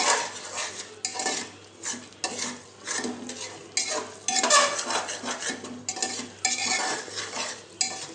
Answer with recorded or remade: recorded